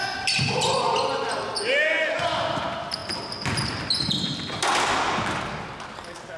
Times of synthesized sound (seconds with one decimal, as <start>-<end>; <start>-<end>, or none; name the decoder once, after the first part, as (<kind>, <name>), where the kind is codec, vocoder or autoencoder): none